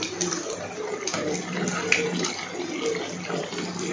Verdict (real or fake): real